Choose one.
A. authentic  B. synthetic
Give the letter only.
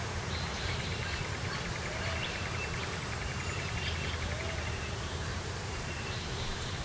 B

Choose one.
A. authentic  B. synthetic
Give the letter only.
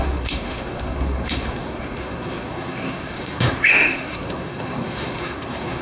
B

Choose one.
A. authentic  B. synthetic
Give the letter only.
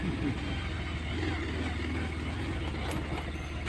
A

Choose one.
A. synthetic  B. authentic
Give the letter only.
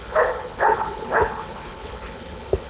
A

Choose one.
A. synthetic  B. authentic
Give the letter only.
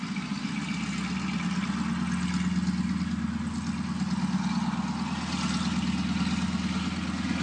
B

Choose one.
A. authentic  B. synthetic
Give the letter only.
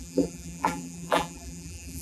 B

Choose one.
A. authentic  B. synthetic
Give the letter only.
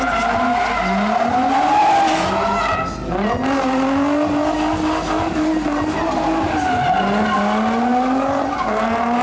A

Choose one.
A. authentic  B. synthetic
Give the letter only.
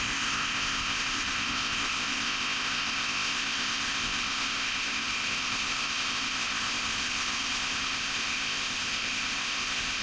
B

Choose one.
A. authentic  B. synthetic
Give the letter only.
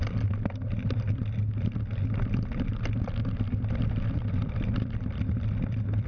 B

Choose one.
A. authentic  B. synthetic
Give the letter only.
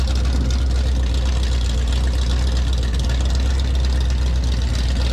A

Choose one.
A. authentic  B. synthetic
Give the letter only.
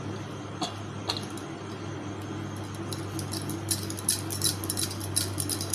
A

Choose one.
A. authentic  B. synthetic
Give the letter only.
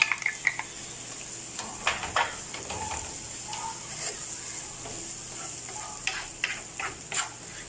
A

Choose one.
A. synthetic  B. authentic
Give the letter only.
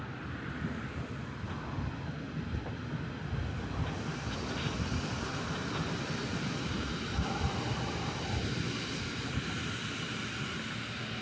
B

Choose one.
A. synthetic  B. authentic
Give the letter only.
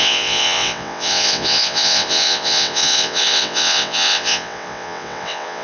A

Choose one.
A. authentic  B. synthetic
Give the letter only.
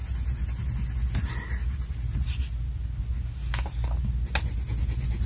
A